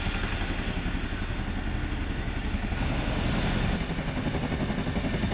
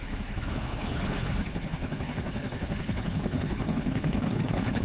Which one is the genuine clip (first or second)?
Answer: first